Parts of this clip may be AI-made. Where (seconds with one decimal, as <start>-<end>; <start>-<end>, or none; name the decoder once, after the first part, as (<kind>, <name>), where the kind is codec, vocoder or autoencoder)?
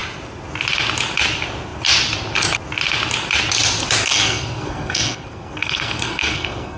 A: 4.0-6.8 (codec, SNAC)